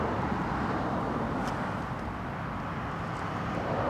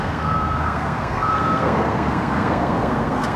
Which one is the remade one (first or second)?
second